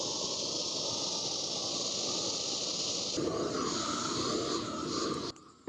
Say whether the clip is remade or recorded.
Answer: recorded